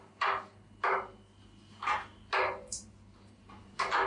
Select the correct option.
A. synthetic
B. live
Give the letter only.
B